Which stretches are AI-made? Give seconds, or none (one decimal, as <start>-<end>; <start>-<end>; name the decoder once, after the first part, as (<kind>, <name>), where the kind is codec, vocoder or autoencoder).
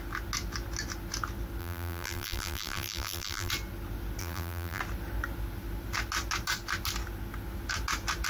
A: 1.6-3.5 (vocoder, BigVGAN v2); 4.2-4.8